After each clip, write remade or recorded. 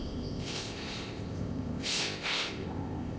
remade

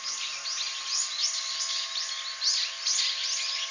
recorded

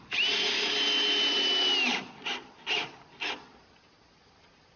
recorded